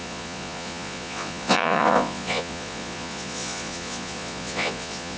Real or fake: fake